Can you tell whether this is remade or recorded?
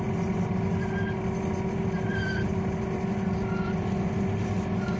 recorded